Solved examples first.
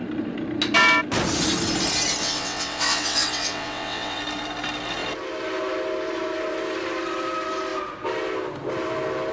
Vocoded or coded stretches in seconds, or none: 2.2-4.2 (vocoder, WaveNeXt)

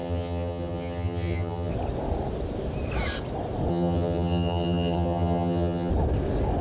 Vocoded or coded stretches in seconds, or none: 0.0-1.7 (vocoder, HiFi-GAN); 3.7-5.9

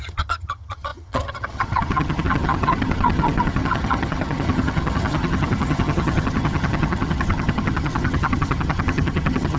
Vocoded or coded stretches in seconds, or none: 0.0-9.6 (vocoder, HiFi-GAN)

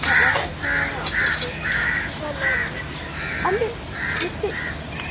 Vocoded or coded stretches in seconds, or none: 1.6-2.2 (autoencoder, DAC-VAE)

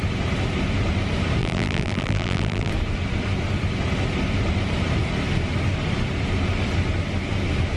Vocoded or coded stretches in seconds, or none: 1.4-2.7 (vocoder, BigVGAN v2)